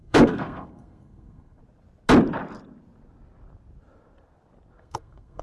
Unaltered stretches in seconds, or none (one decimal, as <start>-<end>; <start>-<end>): 1.6-4.8